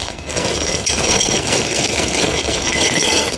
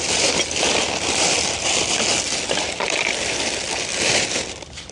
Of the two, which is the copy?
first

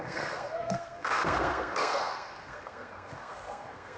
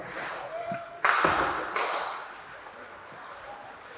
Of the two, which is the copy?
first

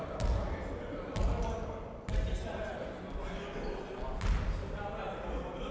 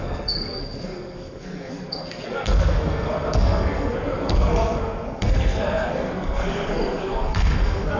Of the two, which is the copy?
second